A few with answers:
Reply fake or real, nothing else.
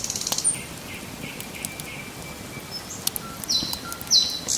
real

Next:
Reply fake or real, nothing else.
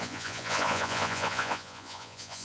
fake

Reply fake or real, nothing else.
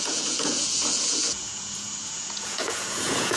fake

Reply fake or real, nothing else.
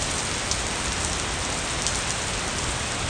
real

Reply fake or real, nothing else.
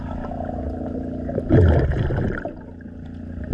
real